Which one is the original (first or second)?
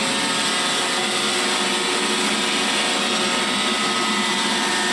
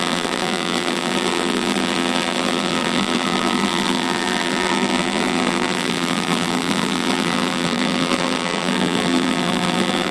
first